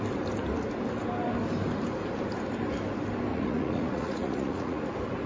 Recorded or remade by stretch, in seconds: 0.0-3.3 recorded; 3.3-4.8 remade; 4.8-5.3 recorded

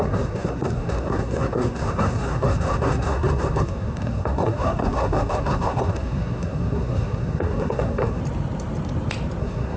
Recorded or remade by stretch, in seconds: 0.0-8.2 remade; 8.2-9.4 recorded; 9.4-9.8 remade

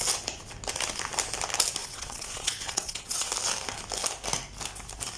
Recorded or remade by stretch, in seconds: 0.0-1.8 recorded; 1.8-3.3 remade; 3.3-5.2 recorded